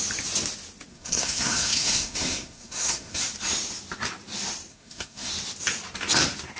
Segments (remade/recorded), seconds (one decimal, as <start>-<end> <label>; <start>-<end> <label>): 0.0-0.9 recorded; 0.9-3.2 remade; 3.2-4.7 recorded; 4.7-5.3 remade; 5.3-6.6 recorded